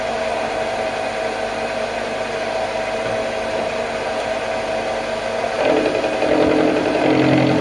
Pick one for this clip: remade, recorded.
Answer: recorded